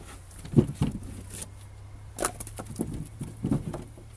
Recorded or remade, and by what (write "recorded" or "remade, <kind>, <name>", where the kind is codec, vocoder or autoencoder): recorded